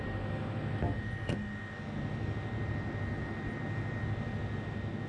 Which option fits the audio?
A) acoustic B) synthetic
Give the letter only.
A